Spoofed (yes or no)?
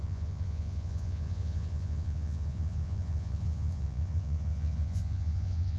yes